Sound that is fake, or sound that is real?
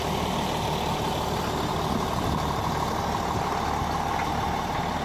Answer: real